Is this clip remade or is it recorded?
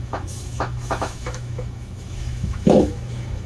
remade